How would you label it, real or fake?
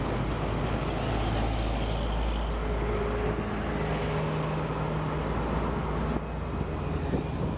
real